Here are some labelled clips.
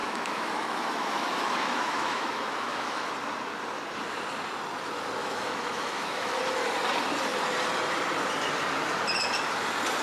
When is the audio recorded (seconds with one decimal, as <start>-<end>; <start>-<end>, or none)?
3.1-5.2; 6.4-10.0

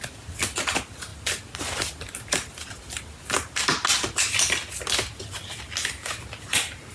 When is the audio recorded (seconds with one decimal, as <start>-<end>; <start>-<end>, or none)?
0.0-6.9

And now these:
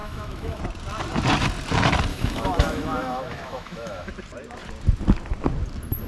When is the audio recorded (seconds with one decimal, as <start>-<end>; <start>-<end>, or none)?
0.6-2.1; 4.1-6.1

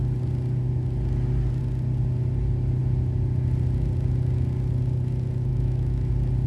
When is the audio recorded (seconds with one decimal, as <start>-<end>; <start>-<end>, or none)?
0.0-5.5; 6.1-6.5